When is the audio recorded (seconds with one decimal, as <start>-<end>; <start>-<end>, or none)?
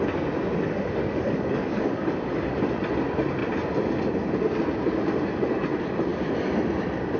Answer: 0.0-1.0; 2.0-7.2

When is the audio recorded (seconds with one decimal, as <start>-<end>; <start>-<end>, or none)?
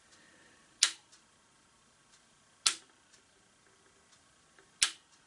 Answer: 0.0-5.3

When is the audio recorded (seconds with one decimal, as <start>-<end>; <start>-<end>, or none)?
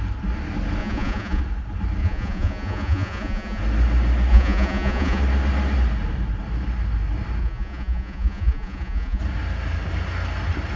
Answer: 0.0-0.8; 1.4-2.0; 3.6-4.3; 5.2-7.4; 9.2-10.8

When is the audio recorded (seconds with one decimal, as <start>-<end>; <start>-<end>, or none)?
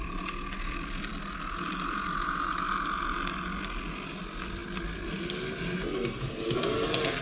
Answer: 0.0-7.2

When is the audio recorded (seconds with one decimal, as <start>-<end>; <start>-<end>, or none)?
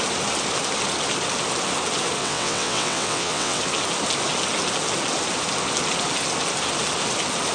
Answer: 0.0-2.2; 3.6-7.5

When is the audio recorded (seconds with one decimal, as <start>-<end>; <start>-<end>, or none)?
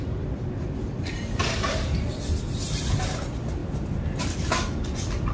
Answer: 0.0-5.3